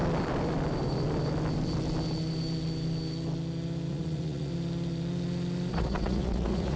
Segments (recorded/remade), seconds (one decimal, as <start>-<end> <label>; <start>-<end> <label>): 0.0-3.9 recorded; 3.9-4.5 remade; 4.5-5.7 recorded; 5.7-6.8 remade